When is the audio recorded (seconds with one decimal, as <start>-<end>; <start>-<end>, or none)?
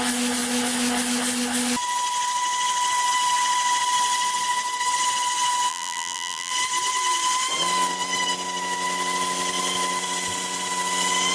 0.0-5.7; 6.5-11.3